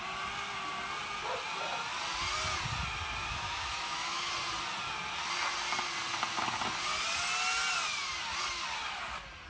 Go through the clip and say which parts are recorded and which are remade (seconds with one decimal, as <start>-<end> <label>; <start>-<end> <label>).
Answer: 0.0-3.3 recorded; 3.3-4.3 remade; 4.3-9.5 recorded